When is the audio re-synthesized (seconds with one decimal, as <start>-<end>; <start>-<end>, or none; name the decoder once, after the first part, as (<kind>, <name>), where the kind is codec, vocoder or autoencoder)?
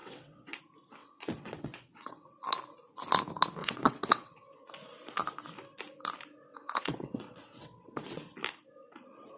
0.0-0.6 (vocoder, WaveNeXt); 1.0-2.3; 3.6-4.7; 6.5-8.2